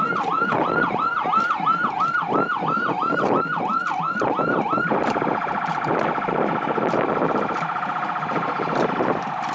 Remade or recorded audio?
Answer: recorded